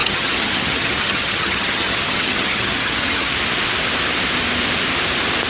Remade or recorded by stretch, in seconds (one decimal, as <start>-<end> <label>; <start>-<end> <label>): 0.0-3.3 remade; 3.3-5.5 recorded